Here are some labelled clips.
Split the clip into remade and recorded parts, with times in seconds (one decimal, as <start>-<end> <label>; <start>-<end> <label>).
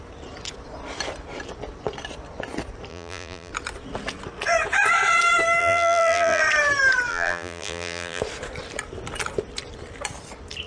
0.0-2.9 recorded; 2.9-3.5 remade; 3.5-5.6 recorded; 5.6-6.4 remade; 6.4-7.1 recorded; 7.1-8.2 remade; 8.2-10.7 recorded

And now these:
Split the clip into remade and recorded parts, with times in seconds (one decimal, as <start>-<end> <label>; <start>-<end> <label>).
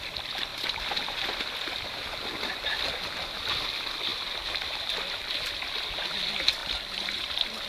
0.0-0.5 recorded; 0.5-3.5 remade; 3.5-4.1 recorded; 4.1-4.8 remade; 4.8-6.6 recorded; 6.6-7.2 remade; 7.2-7.7 recorded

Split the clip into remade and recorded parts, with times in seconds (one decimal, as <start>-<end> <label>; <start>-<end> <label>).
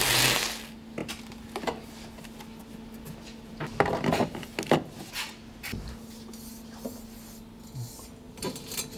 0.0-9.0 recorded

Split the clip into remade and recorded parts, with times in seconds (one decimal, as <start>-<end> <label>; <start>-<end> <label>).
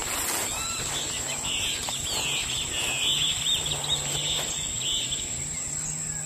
0.0-6.3 recorded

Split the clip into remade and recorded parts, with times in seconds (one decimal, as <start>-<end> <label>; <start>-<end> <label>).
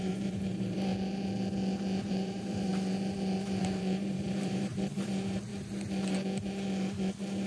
0.0-0.9 remade; 0.9-2.1 recorded; 2.1-2.7 remade; 2.7-3.6 recorded; 3.6-5.5 remade; 5.5-7.5 recorded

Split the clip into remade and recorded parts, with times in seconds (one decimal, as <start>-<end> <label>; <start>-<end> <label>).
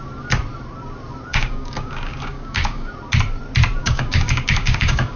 0.0-1.3 recorded; 1.3-2.9 remade; 2.9-3.8 recorded; 3.8-5.2 remade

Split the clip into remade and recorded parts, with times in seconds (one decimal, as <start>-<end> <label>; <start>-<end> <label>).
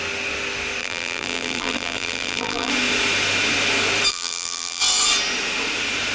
0.0-0.8 recorded; 0.8-2.7 remade; 2.7-4.1 recorded; 4.1-4.8 remade; 4.8-6.1 recorded